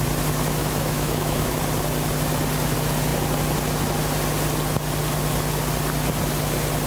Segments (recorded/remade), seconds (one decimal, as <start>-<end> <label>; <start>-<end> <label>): 0.0-0.6 recorded; 0.6-1.6 remade; 1.6-6.9 recorded